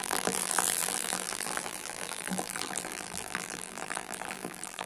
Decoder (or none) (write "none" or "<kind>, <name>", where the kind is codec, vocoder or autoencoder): vocoder, BigVGAN v2